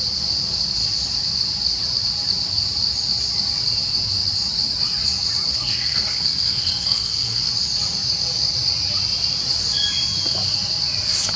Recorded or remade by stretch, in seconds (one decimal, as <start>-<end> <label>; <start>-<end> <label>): 0.0-5.5 recorded; 5.5-7.5 remade; 7.5-11.4 recorded